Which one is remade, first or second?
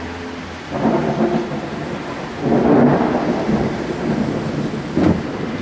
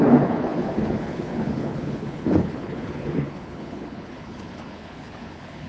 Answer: second